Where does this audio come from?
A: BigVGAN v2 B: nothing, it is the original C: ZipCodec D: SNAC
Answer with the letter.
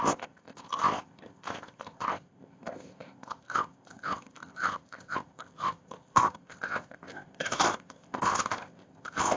C